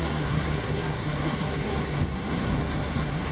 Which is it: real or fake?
fake